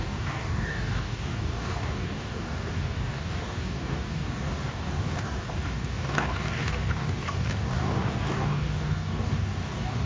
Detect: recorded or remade remade